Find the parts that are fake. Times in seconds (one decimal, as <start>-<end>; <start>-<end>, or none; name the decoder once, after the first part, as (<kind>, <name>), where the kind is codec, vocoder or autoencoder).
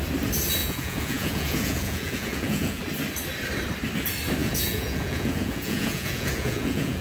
0.6-2.8 (vocoder, Vocos); 4.4-7.0